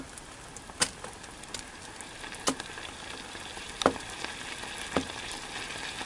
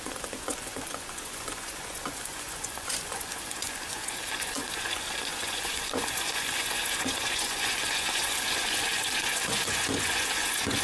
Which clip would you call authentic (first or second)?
first